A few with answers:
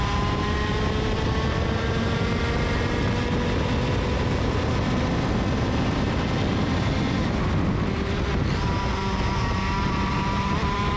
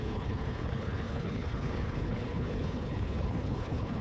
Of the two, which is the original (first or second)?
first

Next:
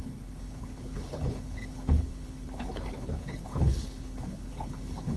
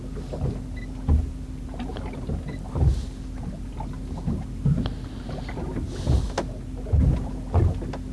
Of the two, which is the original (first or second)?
second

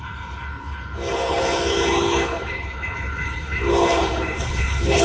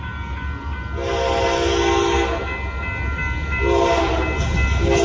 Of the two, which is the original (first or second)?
second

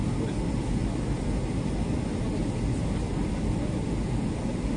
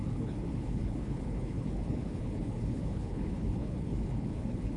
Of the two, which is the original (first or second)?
first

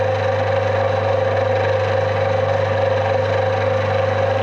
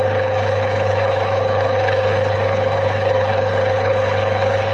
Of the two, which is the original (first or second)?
first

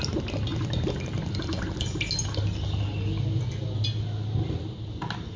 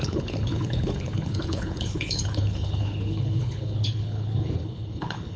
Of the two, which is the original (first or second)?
first